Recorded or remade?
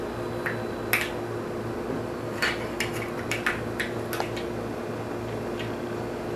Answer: recorded